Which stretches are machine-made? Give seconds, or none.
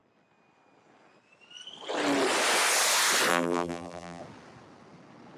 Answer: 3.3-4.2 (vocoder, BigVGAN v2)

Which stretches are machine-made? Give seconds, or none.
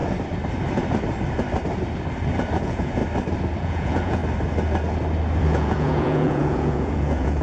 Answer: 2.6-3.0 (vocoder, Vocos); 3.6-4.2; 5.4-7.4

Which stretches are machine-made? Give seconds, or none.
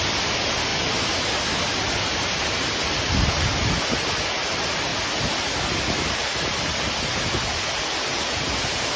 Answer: none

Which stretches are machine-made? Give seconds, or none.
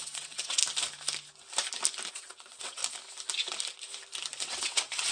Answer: 0.0-0.6 (vocoder, WaveNeXt); 2.1-2.8; 4.4-5.1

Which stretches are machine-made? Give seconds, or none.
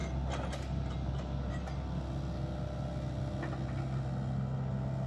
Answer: none